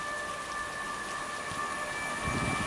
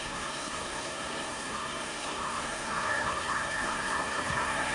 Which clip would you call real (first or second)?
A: first